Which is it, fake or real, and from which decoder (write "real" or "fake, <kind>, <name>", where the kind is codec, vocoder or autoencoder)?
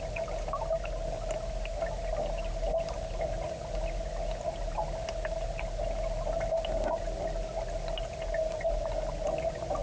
real